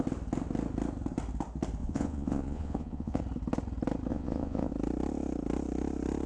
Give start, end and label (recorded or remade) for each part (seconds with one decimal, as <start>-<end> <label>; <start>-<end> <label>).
0.0-1.8 recorded; 1.8-3.2 remade; 3.2-4.1 recorded; 4.1-4.7 remade; 4.7-6.3 recorded